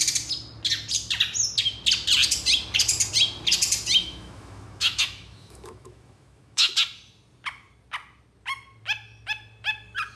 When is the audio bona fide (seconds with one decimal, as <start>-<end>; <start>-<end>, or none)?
0.0-4.0; 6.7-10.2